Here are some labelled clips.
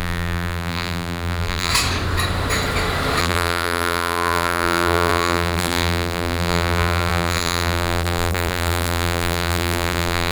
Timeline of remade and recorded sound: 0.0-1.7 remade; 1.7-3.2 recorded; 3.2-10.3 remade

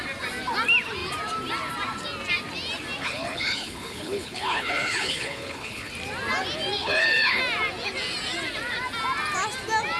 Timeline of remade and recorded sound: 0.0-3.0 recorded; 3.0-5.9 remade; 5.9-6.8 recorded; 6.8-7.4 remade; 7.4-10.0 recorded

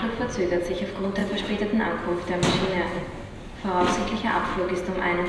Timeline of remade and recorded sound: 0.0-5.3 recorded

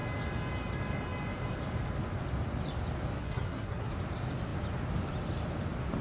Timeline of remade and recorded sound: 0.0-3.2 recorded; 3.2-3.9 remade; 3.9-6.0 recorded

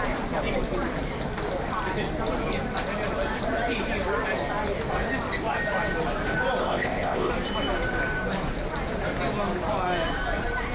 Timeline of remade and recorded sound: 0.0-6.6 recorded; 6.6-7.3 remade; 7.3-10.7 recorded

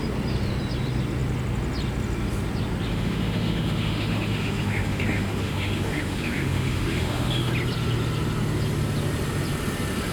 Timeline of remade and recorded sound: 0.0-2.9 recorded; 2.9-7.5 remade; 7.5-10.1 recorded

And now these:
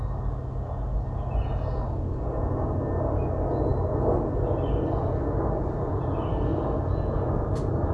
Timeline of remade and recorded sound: 0.0-7.9 recorded